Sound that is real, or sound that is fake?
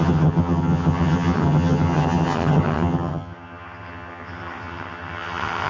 fake